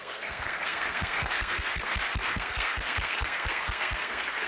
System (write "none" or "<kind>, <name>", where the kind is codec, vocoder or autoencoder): codec, SNAC